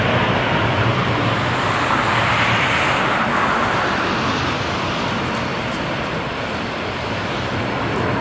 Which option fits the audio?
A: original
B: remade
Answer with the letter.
A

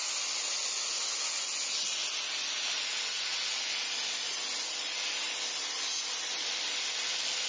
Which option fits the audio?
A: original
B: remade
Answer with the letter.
A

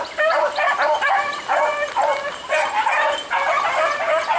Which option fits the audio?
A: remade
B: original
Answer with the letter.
B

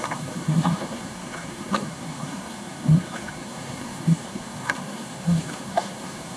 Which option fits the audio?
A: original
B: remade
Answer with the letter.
B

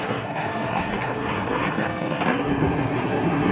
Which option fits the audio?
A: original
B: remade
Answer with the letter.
B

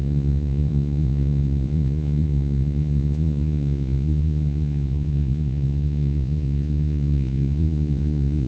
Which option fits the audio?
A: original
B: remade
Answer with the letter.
B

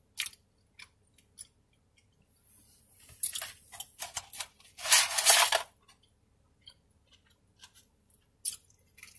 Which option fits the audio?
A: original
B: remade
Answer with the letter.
A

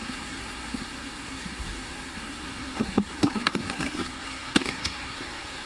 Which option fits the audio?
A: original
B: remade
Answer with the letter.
B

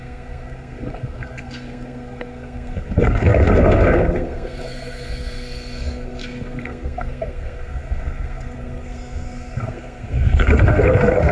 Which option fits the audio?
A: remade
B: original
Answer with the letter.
A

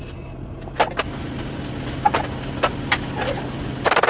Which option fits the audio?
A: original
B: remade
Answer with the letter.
A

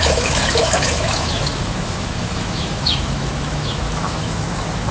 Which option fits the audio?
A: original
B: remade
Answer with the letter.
B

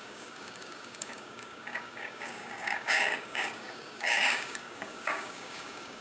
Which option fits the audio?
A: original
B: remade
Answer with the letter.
B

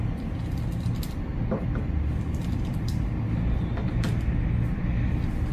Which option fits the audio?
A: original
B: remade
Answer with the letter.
A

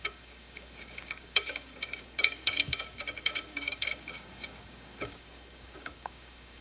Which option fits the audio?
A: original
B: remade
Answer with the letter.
B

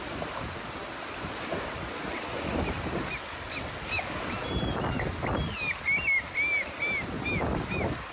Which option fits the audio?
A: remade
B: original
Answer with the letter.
B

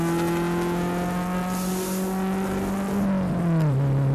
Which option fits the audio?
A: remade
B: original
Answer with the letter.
B